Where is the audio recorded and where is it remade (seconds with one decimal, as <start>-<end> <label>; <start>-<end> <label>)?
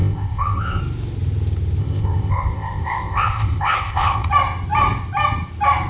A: 0.0-0.8 remade; 0.8-1.8 recorded; 1.8-4.3 remade; 4.3-5.9 recorded